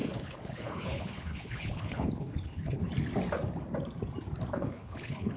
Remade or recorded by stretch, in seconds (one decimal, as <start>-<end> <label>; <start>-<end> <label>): 0.0-2.9 remade; 2.9-4.5 recorded; 4.5-5.4 remade